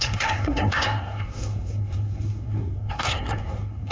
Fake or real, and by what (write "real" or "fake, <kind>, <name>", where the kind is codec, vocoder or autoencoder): fake, codec, SNAC